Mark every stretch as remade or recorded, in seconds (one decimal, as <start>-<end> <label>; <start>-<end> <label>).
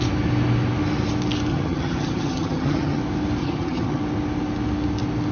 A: 0.0-1.5 recorded; 1.5-3.0 remade; 3.0-3.4 recorded; 3.4-4.0 remade; 4.0-5.3 recorded